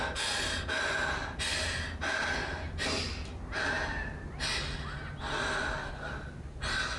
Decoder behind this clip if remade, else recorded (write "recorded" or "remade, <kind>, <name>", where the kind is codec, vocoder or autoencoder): recorded